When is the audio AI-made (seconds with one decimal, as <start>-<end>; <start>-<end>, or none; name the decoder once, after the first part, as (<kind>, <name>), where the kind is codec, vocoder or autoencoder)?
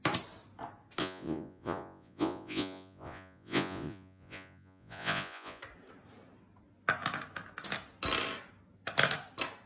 1.0-5.6 (vocoder, Vocos)